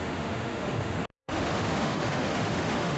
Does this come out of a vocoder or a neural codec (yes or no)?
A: yes